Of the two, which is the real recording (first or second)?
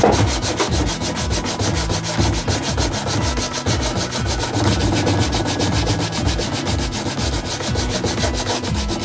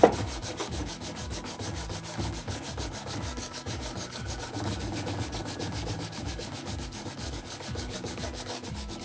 first